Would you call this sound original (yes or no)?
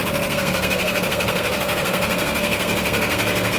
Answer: no